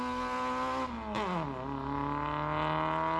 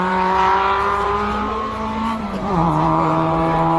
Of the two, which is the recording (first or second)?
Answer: first